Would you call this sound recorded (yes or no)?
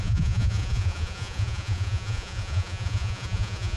no